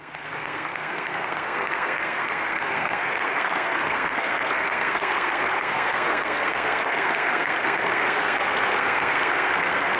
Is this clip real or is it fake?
fake